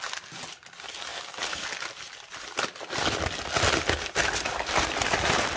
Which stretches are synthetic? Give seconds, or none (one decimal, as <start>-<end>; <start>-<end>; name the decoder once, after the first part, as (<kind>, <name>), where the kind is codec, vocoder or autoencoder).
none